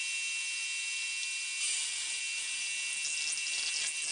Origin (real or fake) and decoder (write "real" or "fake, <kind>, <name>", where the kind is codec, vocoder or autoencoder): real